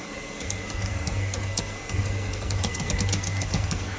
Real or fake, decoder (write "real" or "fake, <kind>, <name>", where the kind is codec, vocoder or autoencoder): fake, codec, SNAC